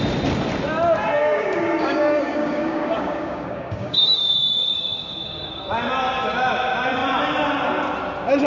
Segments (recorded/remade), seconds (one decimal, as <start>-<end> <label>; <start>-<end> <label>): 0.0-1.2 recorded; 1.2-5.6 remade; 5.6-8.5 recorded